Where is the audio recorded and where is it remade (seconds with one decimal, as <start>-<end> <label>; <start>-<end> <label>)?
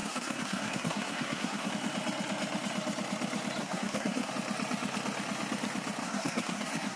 0.0-1.7 remade; 1.7-3.6 recorded; 3.6-4.3 remade; 4.3-6.0 recorded; 6.0-7.0 remade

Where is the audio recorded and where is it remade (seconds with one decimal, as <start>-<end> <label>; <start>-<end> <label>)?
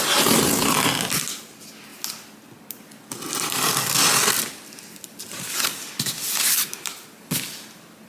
0.0-8.1 recorded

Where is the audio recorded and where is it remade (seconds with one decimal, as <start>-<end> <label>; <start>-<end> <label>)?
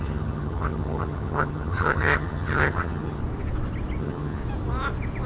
0.0-3.2 remade; 3.2-4.0 recorded; 4.0-4.4 remade; 4.4-5.3 recorded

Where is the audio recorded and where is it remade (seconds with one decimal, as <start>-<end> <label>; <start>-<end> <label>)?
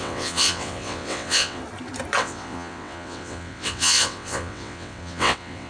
0.0-1.6 remade; 1.6-2.2 recorded; 2.2-5.7 remade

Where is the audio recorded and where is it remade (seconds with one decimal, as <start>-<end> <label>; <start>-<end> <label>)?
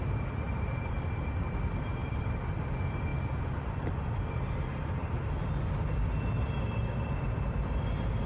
0.0-2.0 recorded; 2.0-2.6 remade; 2.6-8.3 recorded